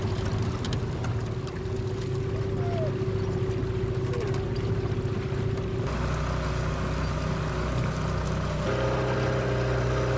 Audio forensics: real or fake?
real